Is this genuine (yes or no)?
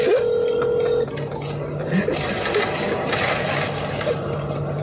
yes